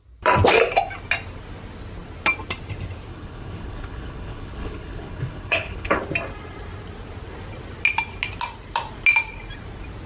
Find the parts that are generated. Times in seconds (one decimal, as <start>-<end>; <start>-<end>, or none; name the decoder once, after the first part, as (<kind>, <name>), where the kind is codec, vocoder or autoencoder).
3.1-6.0 (codec, HILCodec)